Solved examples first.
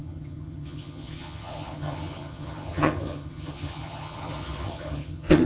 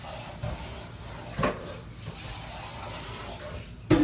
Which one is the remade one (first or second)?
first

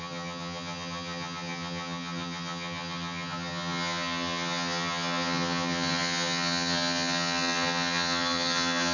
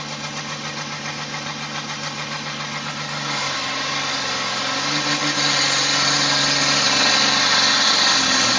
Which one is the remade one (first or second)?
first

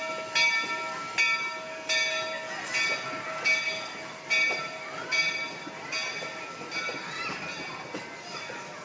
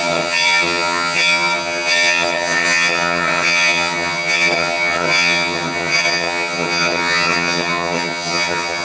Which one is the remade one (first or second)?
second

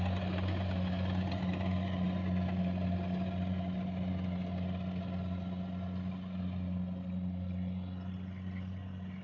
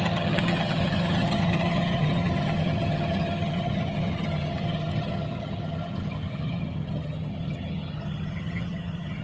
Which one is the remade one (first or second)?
second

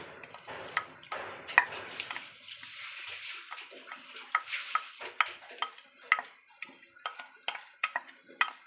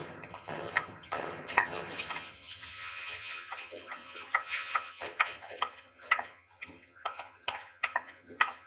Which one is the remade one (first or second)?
second